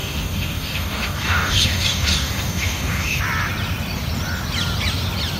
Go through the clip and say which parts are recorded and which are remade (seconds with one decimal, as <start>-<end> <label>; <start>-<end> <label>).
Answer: 0.0-3.2 remade; 3.2-5.4 recorded